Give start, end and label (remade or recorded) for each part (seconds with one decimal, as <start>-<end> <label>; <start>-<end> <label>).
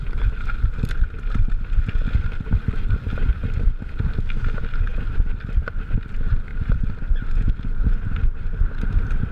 0.0-9.3 recorded